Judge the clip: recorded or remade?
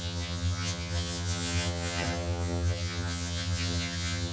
remade